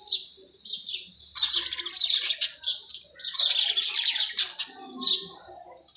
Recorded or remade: recorded